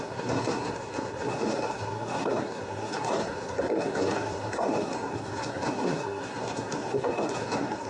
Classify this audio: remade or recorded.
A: remade